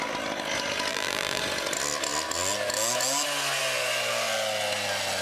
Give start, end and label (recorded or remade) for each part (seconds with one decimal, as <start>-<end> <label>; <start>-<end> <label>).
0.0-0.9 recorded; 0.9-1.4 remade; 1.4-5.2 recorded